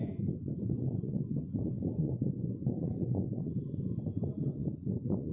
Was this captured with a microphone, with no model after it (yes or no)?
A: no